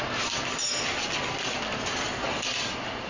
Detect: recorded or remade recorded